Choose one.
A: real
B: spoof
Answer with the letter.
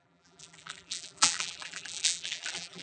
B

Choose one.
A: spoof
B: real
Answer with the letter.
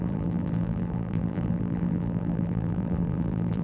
A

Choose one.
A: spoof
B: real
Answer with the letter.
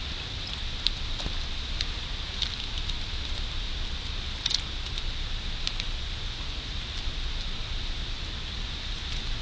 B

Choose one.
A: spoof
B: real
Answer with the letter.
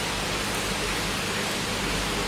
B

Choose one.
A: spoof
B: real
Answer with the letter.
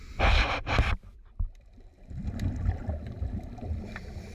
A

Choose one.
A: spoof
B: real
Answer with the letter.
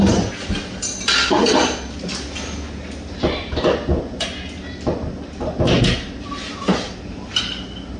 B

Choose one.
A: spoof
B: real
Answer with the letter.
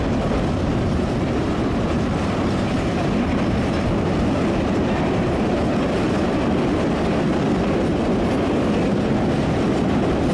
A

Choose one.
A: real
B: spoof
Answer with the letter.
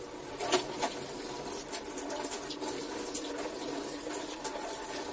A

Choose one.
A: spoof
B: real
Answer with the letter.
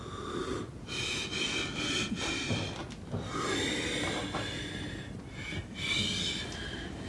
B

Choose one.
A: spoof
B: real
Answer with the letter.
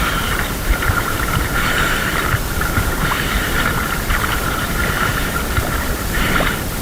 A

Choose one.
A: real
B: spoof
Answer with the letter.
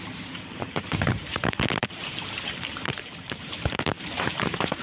B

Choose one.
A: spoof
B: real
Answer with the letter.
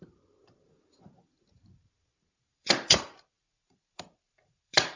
A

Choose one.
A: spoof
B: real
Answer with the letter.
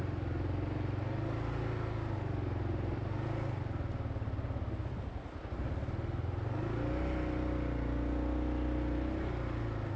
B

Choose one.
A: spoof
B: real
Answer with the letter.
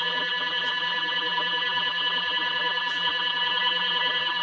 A